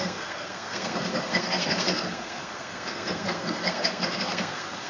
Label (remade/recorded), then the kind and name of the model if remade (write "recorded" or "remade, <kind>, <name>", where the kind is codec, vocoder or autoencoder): remade, codec, SNAC